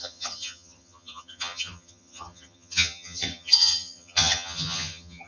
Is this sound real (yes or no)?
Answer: no